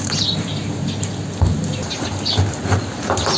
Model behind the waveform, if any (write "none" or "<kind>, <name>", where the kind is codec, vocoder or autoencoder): none